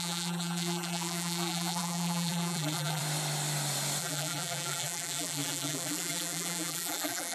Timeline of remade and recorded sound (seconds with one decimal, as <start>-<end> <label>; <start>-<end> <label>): 0.0-3.0 remade; 3.0-4.0 recorded; 4.0-7.3 remade